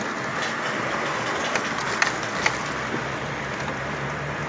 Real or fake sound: real